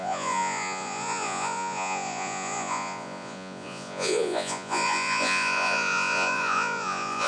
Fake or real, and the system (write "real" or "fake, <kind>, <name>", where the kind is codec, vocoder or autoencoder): fake, vocoder, Vocos